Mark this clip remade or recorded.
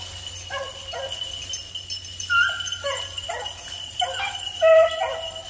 recorded